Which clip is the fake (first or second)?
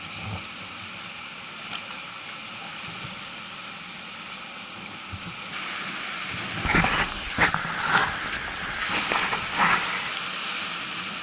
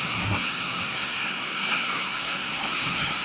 second